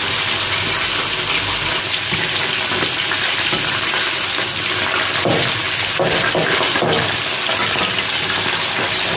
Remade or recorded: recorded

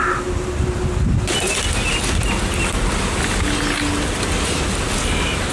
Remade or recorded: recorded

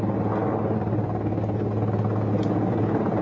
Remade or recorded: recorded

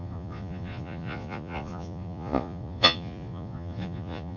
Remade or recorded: remade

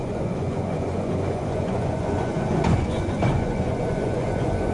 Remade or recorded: remade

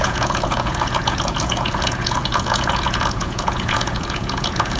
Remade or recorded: remade